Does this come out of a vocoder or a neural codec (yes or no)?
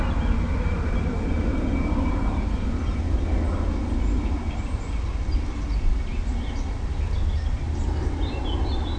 no